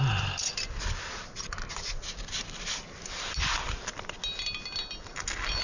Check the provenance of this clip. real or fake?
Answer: real